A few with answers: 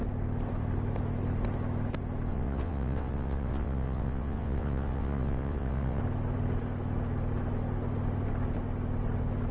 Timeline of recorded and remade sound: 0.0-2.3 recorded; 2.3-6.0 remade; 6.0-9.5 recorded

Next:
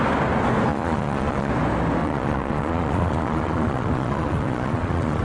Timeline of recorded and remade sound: 0.0-0.7 recorded; 0.7-1.5 remade; 1.5-2.0 recorded; 2.0-5.2 remade

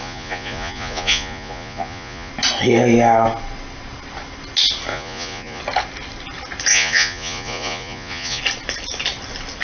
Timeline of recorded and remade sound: 0.0-2.3 remade; 2.3-4.9 recorded; 4.9-5.6 remade; 5.6-6.7 recorded; 6.7-8.4 remade; 8.4-9.6 recorded

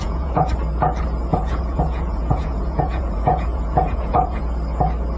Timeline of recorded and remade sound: 0.0-0.5 remade; 0.5-1.3 recorded; 1.3-4.4 remade; 4.4-5.2 recorded

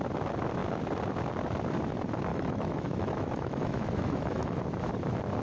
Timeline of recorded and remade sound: 0.0-2.3 recorded; 2.3-4.6 remade; 4.6-5.4 recorded

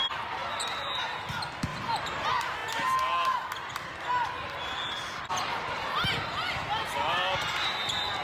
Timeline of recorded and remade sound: 0.0-8.2 recorded